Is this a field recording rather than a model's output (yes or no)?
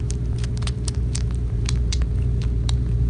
no